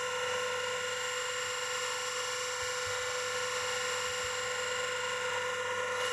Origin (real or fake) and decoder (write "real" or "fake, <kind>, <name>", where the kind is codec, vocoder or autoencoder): real